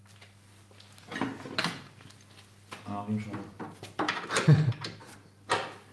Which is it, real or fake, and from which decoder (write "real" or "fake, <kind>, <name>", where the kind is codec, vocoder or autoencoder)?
real